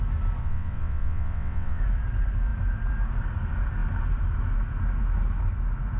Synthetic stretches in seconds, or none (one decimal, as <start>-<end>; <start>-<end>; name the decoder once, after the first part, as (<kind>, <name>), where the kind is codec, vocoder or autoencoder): 0.4-1.8 (vocoder, WaveNeXt)

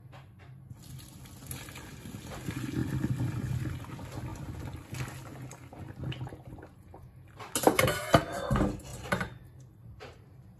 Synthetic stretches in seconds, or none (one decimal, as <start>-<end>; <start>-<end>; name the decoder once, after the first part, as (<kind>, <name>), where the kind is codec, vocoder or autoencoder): 8.9-10.6 (vocoder, BigVGAN v2)